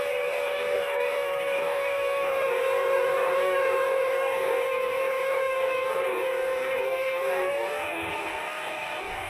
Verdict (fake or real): fake